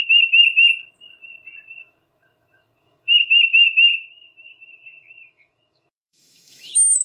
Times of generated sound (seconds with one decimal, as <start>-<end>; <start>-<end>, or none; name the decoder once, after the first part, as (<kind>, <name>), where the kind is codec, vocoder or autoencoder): 0.0-0.4 (autoencoder, DAC-VAE); 1.8-7.0